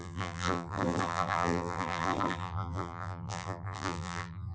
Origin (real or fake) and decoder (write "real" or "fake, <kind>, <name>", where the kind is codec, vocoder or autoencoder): fake, vocoder, BigVGAN v2